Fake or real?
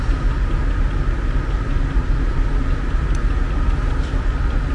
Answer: real